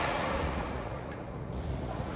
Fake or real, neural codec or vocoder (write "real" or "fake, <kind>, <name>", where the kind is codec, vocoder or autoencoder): fake, vocoder, Vocos